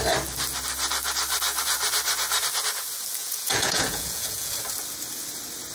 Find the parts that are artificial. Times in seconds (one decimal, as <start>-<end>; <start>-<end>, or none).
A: 3.2-4.5